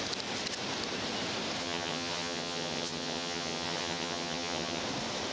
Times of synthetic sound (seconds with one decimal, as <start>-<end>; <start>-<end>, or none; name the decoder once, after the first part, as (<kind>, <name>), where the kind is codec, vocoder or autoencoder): 1.6-4.8 (vocoder, HiFi-GAN)